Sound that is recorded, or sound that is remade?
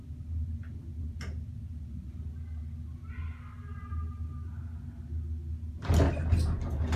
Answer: recorded